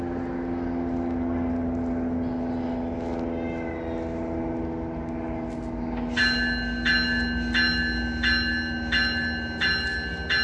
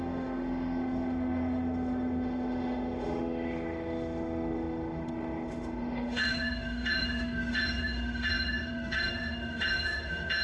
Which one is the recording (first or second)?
first